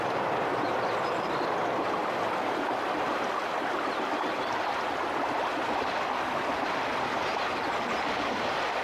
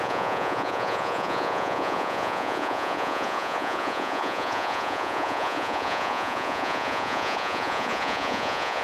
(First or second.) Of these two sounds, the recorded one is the first